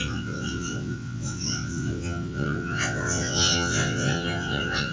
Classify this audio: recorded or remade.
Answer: remade